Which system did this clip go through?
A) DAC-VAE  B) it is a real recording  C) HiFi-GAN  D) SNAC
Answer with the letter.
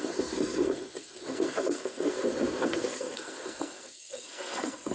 D